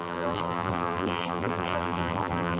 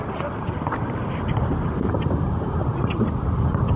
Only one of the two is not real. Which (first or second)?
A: first